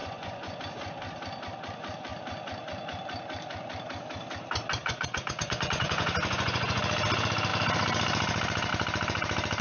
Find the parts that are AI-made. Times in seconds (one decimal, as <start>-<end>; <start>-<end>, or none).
0.0-0.6; 4.8-6.8